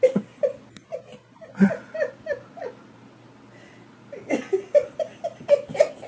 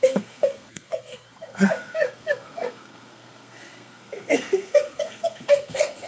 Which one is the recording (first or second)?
first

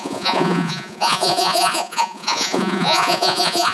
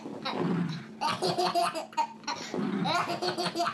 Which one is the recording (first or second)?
second